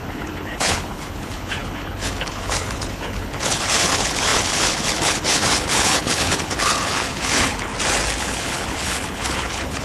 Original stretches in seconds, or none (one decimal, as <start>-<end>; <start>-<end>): 7.7-8.2